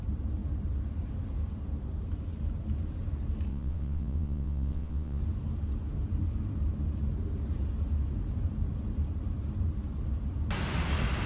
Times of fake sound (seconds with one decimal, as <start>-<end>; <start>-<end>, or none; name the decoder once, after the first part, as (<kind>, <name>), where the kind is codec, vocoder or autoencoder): 3.5-5.2 (vocoder, WaveNeXt)